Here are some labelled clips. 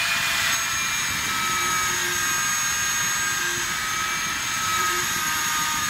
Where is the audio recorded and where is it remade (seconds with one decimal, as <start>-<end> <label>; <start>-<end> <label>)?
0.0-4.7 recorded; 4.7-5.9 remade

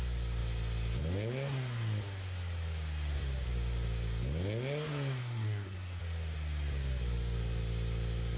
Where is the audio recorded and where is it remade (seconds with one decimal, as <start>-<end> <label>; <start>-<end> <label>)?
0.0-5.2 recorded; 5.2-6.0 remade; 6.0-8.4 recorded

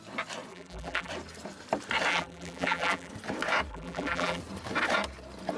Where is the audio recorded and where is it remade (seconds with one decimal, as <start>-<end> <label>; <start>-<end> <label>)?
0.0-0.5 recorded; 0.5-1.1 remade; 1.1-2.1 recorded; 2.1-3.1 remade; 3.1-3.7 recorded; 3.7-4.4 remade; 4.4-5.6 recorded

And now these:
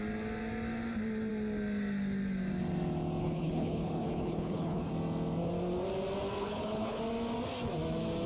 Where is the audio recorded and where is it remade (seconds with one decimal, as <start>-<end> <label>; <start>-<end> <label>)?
0.0-3.2 recorded; 3.2-4.9 remade; 4.9-6.4 recorded; 6.4-7.0 remade; 7.0-8.3 recorded

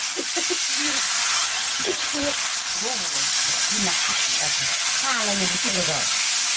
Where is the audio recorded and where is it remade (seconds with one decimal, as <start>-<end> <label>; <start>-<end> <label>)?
0.0-1.2 recorded; 1.2-2.2 remade; 2.2-4.0 recorded; 4.0-4.9 remade; 4.9-6.6 recorded

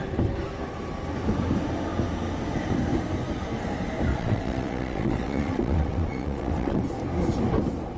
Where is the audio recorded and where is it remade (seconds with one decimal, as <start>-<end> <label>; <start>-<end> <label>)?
0.0-4.1 recorded; 4.1-6.8 remade; 6.8-8.0 recorded